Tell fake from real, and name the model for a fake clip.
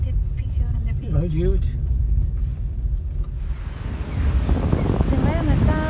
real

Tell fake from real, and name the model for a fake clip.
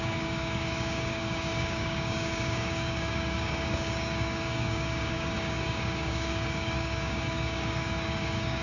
fake, codec, DAC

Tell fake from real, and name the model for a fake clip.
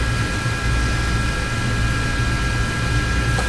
real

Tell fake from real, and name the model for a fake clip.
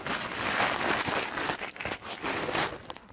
real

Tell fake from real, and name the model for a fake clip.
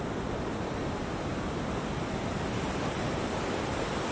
fake, vocoder, BigVGAN v2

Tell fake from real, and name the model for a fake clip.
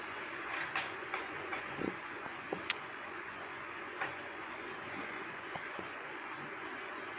fake, vocoder, Vocos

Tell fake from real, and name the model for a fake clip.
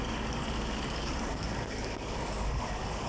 fake, codec, DAC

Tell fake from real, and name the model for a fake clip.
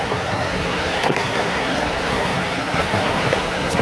fake, codec, SNAC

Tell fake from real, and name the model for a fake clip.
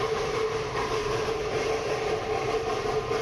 real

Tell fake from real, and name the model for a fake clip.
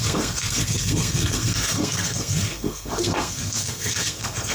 fake, codec, SNAC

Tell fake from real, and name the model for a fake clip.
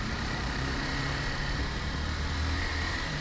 fake, vocoder, BigVGAN v2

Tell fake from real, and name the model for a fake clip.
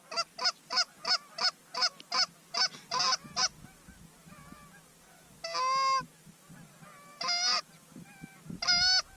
real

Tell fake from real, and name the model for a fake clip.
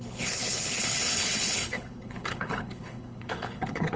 fake, codec, HILCodec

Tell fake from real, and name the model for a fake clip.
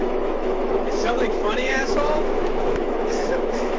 fake, autoencoder, DAC-VAE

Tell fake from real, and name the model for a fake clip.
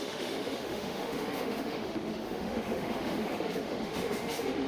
fake, autoencoder, DAC-VAE